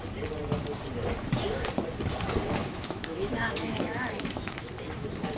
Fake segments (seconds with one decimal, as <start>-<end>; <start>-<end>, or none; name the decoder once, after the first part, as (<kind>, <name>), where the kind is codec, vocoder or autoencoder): 2.6-4.7 (autoencoder, DAC-VAE)